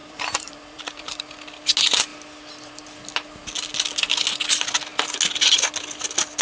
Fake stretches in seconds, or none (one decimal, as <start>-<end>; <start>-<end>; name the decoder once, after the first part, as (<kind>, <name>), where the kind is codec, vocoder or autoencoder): 0.0-1.2 (vocoder, BigVGAN v2)